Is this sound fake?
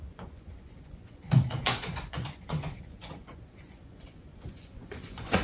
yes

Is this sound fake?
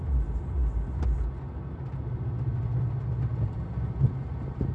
no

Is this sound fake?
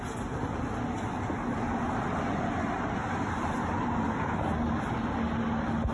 no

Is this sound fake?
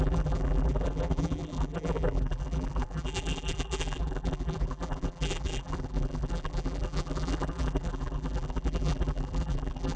yes